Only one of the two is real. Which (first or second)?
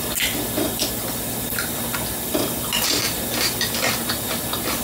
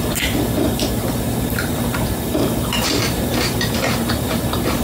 first